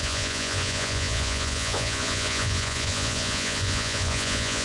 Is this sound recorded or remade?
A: remade